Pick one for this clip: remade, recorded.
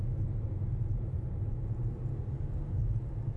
recorded